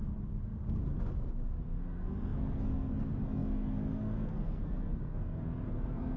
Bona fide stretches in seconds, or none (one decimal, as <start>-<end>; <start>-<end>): 0.8-1.6